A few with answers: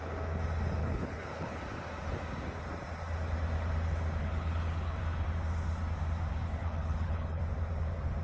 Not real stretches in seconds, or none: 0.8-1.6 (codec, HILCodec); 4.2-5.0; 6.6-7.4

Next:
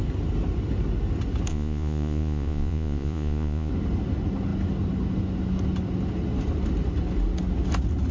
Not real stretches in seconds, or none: 1.5-3.7 (vocoder, Vocos)

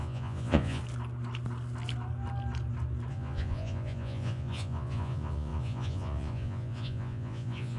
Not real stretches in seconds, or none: 0.0-0.8 (vocoder, Vocos); 3.1-7.8

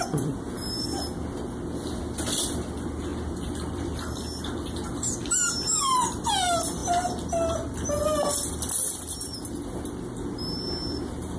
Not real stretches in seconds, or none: 0.0-11.4 (vocoder, BigVGAN v2)

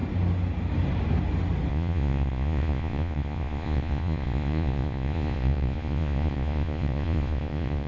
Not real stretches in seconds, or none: 1.7-7.9 (vocoder, Vocos)

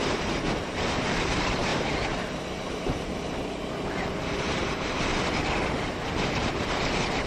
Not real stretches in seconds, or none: 0.0-1.7 (vocoder, BigVGAN v2); 3.9-5.1; 6.3-7.3